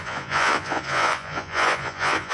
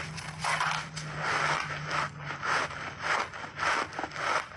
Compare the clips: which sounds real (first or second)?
second